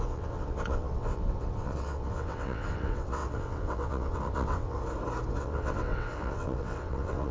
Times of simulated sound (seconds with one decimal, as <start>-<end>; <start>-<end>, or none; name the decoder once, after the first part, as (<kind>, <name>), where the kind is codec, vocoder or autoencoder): 0.0-4.8 (vocoder, WaveNeXt); 5.4-7.3